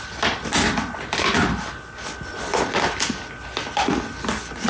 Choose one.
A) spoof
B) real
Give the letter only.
B